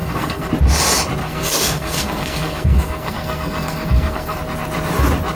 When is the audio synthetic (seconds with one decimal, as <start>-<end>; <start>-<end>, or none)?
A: 0.0-0.5; 1.2-4.4